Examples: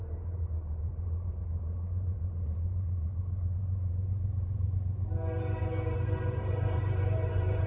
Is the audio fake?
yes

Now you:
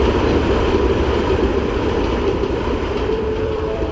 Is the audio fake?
yes